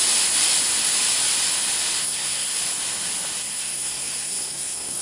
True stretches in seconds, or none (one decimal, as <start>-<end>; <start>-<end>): 0.0-2.0; 2.6-3.4